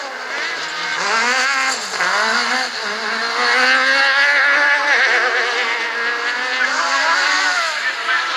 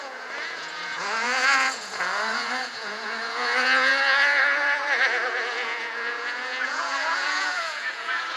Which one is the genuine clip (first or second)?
first